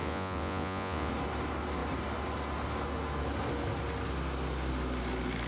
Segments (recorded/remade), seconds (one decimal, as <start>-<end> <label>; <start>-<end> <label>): 0.0-1.1 remade; 1.1-5.5 recorded